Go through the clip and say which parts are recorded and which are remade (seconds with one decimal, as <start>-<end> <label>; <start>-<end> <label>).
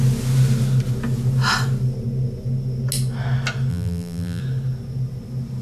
0.0-3.7 recorded; 3.7-4.4 remade; 4.4-5.6 recorded